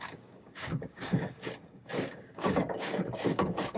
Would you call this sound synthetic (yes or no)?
yes